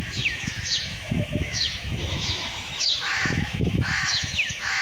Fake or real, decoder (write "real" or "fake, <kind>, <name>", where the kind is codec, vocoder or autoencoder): fake, autoencoder, DAC-VAE